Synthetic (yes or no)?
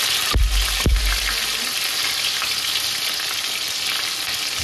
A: no